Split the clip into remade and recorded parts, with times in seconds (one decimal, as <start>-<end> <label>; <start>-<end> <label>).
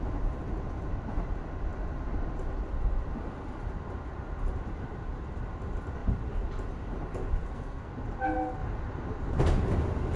0.0-7.4 recorded; 7.4-7.9 remade; 7.9-10.2 recorded